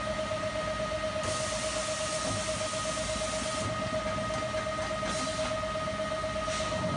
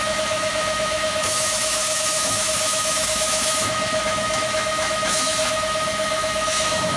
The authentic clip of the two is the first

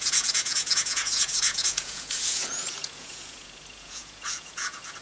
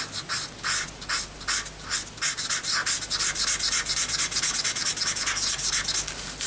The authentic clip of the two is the second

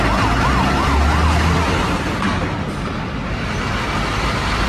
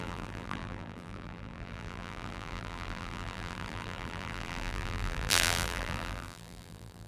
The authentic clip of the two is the first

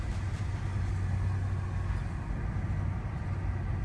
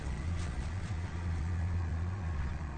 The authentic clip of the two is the first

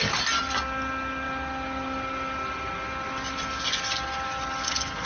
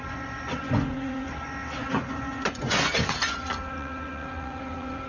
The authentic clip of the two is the first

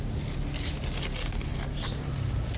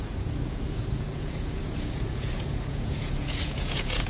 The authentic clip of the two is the first